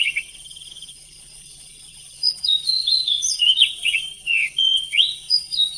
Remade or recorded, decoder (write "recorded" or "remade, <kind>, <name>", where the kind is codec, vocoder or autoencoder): remade, vocoder, Vocos